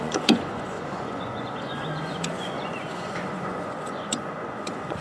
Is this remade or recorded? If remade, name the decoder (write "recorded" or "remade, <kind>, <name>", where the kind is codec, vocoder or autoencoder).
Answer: remade, vocoder, Vocos